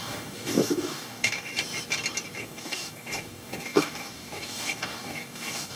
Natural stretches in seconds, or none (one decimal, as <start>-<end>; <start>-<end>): 1.5-2.4